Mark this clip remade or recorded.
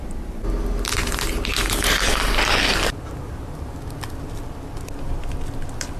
recorded